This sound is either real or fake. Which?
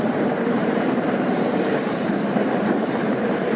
fake